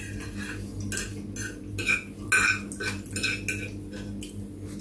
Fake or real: real